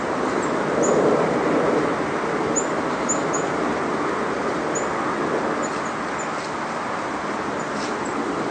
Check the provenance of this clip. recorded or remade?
recorded